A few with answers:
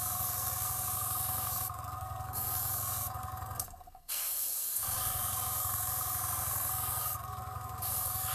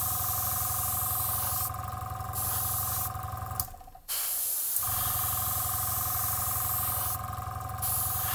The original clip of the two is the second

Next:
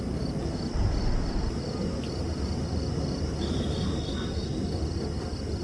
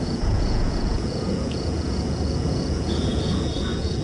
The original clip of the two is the first